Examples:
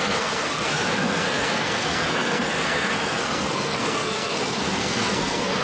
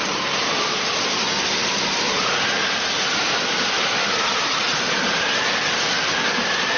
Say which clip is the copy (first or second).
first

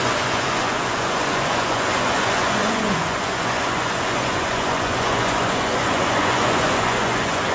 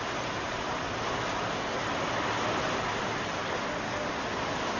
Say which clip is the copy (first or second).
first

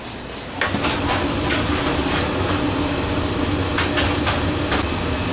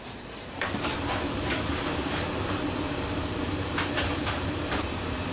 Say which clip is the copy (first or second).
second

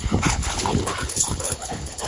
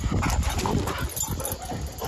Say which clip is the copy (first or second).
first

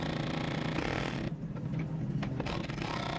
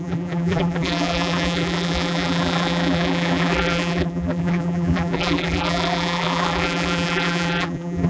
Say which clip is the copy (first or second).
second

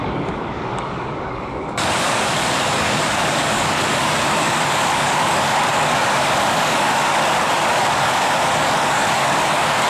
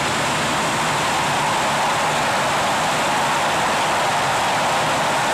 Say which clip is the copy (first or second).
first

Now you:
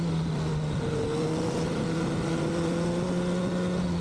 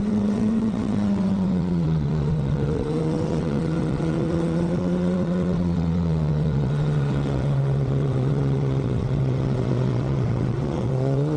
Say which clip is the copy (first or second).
second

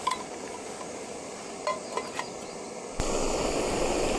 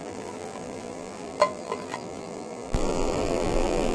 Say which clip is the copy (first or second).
second